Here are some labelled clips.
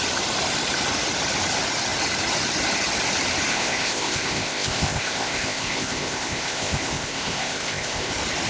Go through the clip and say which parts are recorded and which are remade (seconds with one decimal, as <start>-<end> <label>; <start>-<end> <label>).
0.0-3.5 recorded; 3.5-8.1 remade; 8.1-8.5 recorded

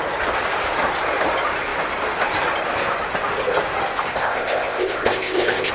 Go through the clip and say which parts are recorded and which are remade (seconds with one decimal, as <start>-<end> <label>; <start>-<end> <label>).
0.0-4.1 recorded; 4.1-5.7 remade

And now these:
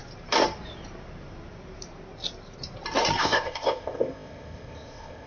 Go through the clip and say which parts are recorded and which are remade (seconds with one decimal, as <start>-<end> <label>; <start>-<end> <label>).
0.0-3.2 recorded; 3.2-5.3 remade

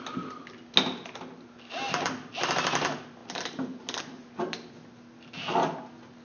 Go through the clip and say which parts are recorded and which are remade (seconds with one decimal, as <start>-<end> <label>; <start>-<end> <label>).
0.0-6.2 recorded

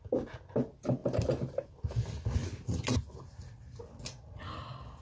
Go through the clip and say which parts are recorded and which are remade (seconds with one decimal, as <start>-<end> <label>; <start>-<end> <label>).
0.0-5.0 recorded

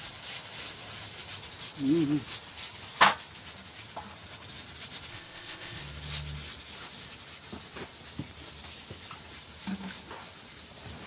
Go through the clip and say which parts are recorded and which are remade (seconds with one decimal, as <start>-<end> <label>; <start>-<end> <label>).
0.0-5.1 recorded; 5.1-5.8 remade; 5.8-11.1 recorded

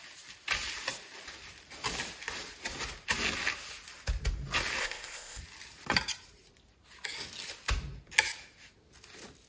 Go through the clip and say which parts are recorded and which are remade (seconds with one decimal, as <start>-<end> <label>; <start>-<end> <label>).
0.0-4.8 recorded; 4.8-5.4 remade; 5.4-9.5 recorded